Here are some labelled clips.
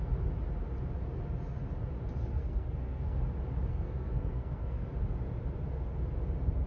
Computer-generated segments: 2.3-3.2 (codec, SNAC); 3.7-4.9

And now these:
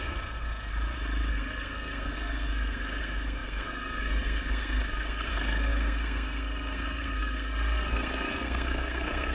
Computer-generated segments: 0.0-0.7 (codec, SNAC); 1.3-9.3

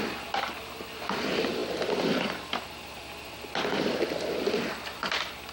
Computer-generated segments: 1.6-4.3 (vocoder, BigVGAN v2)

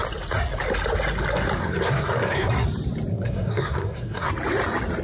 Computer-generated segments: 1.6-2.5 (codec, SNAC); 3.1-4.3

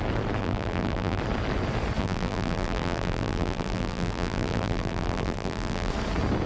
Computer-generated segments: 0.4-1.2 (vocoder, BigVGAN v2); 2.0-5.9